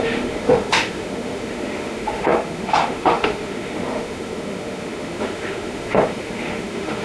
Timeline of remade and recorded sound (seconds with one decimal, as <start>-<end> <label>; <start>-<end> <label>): 0.0-7.0 remade